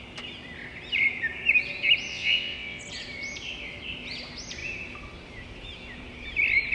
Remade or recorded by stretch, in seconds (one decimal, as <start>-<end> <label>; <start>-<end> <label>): 0.0-2.1 recorded; 2.1-2.8 remade; 2.8-6.7 recorded